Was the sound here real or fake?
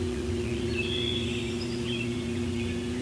fake